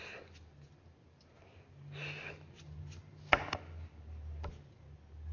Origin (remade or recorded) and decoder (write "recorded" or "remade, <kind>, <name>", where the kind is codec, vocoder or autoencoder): recorded